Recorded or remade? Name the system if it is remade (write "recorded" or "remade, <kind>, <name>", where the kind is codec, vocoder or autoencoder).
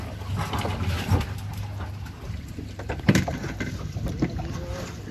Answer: recorded